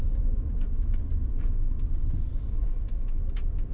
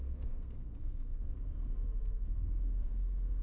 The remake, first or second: second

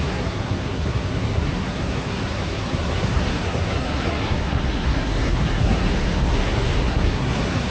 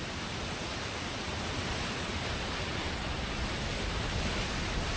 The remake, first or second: first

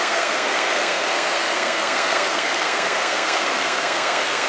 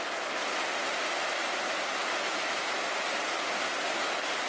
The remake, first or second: first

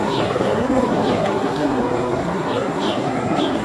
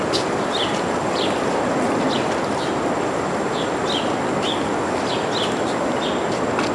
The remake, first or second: first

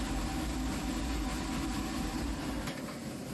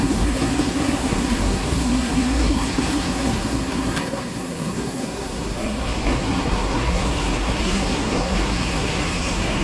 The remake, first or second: second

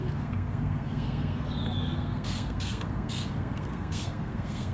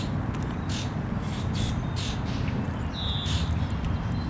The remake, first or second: first